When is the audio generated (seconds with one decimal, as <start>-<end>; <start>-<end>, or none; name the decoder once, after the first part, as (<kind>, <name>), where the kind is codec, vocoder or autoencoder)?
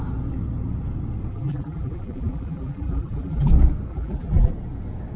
1.3-3.5 (vocoder, BigVGAN v2); 3.9-4.5